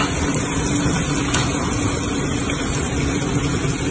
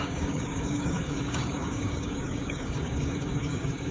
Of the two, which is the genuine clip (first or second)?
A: first